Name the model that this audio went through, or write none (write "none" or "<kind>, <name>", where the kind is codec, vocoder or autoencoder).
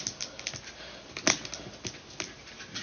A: none